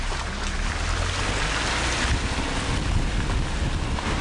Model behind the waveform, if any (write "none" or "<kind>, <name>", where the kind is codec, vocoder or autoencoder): none